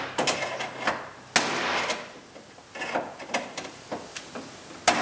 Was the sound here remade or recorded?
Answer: recorded